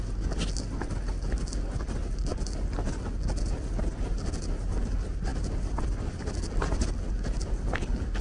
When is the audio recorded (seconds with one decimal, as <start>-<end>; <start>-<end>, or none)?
0.0-8.2